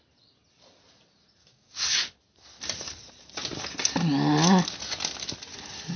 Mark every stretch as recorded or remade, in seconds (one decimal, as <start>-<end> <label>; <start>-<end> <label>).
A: 0.0-1.4 recorded; 1.4-2.0 remade; 2.0-6.0 recorded